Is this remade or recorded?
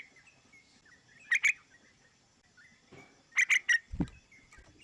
recorded